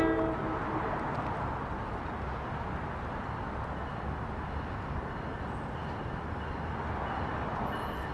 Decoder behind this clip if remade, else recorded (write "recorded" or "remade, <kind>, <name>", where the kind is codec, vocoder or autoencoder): recorded